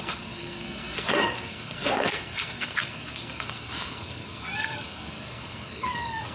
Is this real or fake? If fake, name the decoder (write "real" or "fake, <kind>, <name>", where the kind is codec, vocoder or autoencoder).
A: fake, codec, SNAC